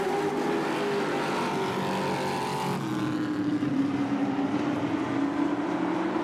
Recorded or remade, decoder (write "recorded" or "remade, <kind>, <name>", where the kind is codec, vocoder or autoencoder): recorded